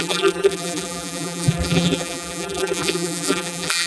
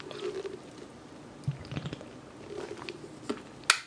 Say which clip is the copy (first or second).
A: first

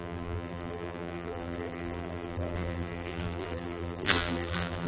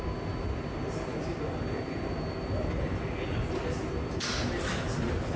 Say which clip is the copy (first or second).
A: first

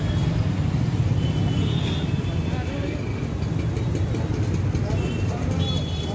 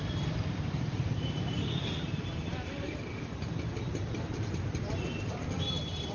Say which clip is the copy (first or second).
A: second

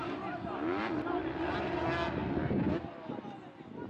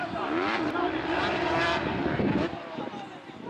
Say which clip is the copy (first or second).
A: second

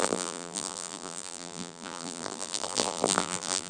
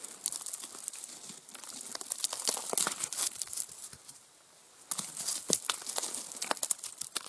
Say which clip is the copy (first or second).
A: first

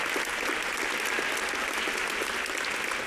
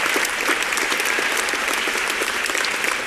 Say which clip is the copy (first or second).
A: second